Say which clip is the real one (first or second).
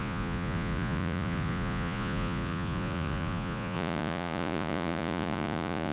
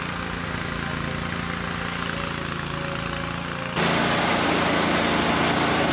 second